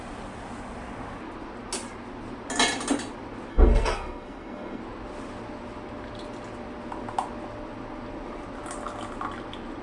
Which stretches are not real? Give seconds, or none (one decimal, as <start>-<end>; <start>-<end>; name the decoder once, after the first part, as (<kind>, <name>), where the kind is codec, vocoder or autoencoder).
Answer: 3.5-4.8 (codec, SNAC)